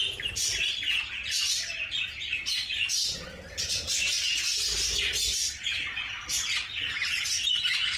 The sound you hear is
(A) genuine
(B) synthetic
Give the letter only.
A